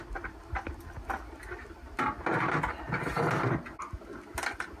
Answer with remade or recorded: recorded